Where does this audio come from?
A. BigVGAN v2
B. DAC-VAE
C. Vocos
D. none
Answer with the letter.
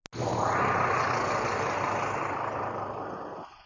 D